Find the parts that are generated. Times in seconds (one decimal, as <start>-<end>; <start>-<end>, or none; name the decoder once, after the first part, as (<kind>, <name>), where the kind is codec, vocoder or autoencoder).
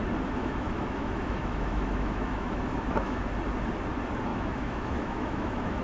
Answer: 0.4-3.2 (autoencoder, DAC-VAE); 4.3-5.8